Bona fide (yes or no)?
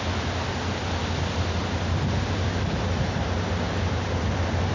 yes